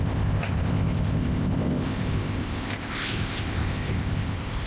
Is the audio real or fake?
fake